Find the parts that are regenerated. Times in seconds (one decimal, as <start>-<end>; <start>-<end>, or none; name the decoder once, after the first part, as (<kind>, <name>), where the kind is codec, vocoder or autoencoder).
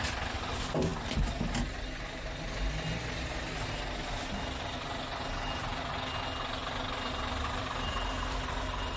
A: 6.6-8.6 (vocoder, BigVGAN v2)